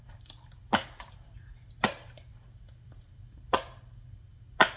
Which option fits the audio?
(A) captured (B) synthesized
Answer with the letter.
A